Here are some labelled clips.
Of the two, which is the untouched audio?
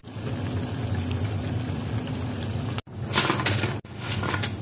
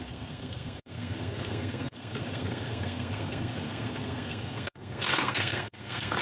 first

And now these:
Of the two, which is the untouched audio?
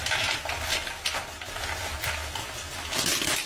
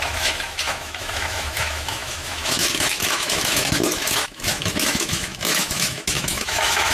first